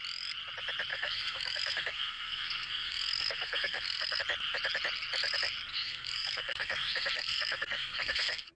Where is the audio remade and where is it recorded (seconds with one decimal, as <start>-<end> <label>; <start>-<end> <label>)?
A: 0.0-0.9 recorded; 0.9-4.2 remade; 4.2-5.7 recorded; 5.7-8.5 remade